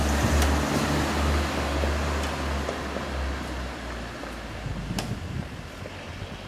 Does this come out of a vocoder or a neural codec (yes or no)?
no